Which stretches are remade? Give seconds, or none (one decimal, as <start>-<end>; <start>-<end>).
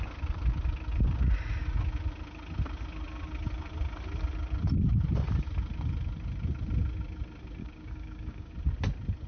7.6-8.5